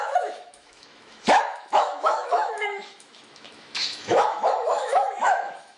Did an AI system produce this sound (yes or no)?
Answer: yes